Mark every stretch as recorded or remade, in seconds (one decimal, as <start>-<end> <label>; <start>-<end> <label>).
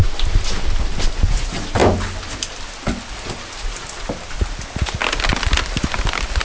0.0-6.4 recorded